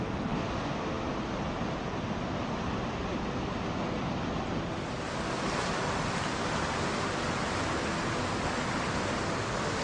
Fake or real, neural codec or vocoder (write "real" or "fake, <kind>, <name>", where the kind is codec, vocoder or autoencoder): real